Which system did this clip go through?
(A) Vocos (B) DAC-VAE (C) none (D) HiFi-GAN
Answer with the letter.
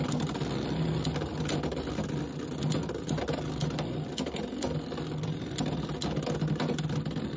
C